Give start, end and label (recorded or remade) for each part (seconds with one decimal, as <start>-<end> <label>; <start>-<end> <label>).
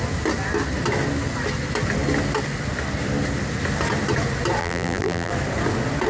0.0-4.6 recorded; 4.6-5.3 remade; 5.3-6.1 recorded